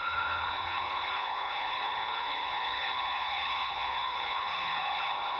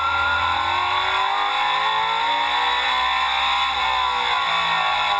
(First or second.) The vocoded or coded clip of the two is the first